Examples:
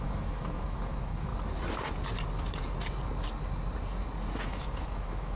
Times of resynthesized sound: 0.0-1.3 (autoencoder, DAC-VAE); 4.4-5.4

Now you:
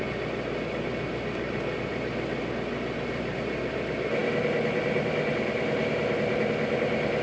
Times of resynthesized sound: none